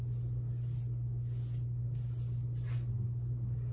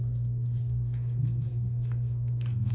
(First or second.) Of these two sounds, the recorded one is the first